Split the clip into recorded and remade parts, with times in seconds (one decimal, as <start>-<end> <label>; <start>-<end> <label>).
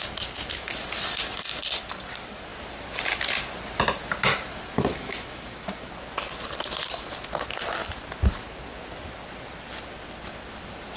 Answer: 0.0-4.9 recorded; 4.9-5.9 remade; 5.9-11.0 recorded